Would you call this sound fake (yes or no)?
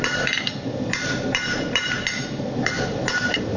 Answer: yes